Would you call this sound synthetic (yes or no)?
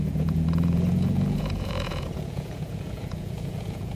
yes